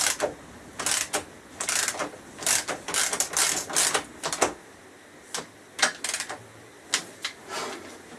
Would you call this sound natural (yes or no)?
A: yes